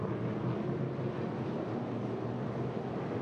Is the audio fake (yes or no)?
no